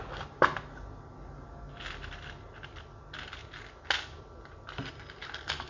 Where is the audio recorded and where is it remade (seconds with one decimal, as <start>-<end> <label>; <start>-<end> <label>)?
0.0-5.7 recorded